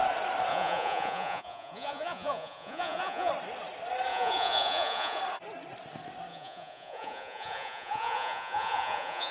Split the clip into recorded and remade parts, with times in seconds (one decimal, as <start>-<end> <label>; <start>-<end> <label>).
0.0-0.5 recorded; 0.5-3.3 remade; 3.3-4.1 recorded; 4.1-5.2 remade; 5.2-6.3 recorded; 6.3-9.3 remade